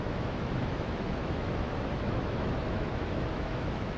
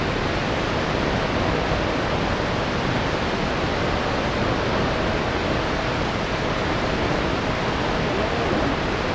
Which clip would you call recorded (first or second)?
second